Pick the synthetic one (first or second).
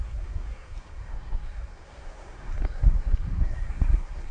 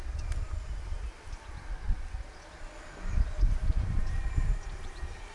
first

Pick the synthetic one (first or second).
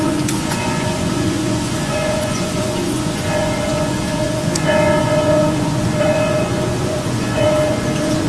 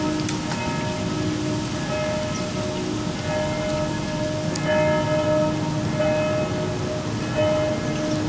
first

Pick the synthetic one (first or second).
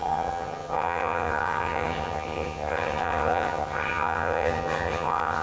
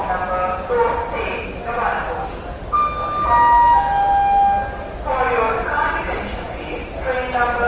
first